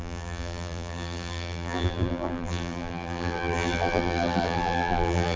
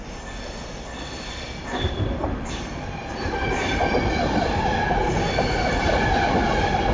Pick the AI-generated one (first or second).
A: first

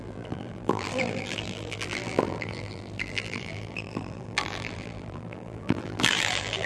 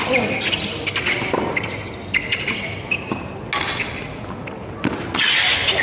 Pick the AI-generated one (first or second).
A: first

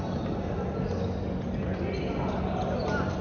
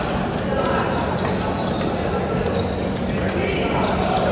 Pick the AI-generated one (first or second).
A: second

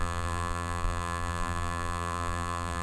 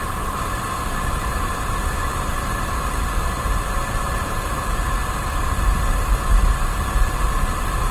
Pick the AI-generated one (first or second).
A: first